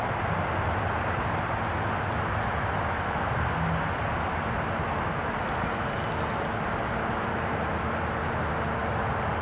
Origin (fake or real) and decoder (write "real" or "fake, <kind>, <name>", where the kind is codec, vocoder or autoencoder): real